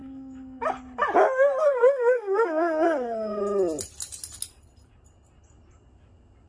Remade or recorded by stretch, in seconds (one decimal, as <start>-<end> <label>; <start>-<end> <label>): 0.0-0.6 remade; 0.6-1.6 recorded; 1.6-3.4 remade; 3.4-6.5 recorded